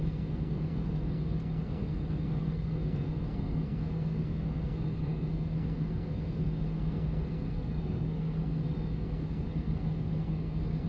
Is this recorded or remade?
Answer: remade